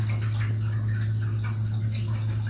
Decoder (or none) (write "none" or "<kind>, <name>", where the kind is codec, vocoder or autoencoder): none